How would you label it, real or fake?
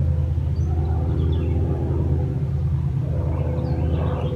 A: real